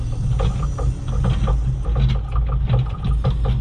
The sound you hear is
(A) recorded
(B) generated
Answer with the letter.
A